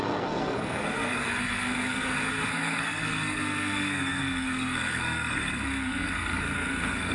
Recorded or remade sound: remade